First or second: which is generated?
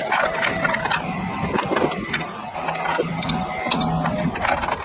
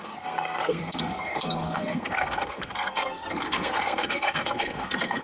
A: second